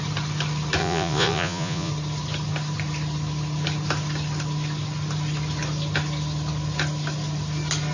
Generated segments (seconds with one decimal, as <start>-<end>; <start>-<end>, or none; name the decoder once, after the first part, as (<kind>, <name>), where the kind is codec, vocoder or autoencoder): 0.8-1.9 (vocoder, Vocos)

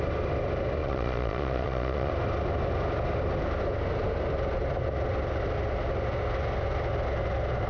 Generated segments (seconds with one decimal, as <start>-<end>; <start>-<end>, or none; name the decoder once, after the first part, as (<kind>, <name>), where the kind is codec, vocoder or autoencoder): 0.8-2.1 (vocoder, Vocos)

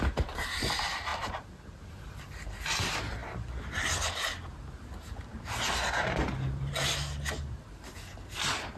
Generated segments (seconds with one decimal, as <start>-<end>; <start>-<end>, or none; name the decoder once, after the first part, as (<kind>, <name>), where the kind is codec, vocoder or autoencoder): none

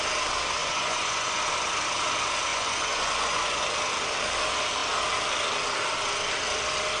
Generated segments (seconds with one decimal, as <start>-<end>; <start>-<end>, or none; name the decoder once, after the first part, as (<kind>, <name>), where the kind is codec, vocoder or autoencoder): 0.6-1.4 (vocoder, Vocos); 2.5-3.6

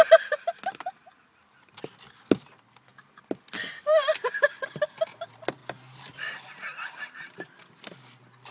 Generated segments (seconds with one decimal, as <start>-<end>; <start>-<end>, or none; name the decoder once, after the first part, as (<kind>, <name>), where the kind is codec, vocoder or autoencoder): none

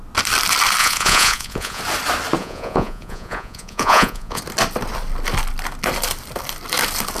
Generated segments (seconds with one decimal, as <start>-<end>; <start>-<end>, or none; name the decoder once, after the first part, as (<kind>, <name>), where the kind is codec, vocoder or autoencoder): 0.8-1.8 (vocoder, Vocos); 2.4-4.4

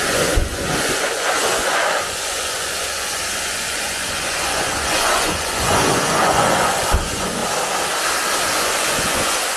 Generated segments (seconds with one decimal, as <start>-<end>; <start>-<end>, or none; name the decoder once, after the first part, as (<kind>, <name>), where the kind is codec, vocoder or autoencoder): 0.0-7.4 (vocoder, Vocos); 8.5-9.6

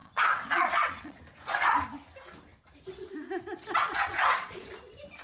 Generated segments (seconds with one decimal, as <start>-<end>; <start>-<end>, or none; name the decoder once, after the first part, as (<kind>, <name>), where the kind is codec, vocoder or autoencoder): 0.0-1.2 (vocoder, Vocos); 3.8-4.7